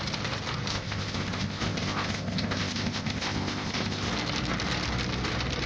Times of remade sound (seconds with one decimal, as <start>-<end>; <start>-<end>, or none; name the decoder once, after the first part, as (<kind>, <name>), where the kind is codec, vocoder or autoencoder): 0.7-4.1 (codec, ZipCodec)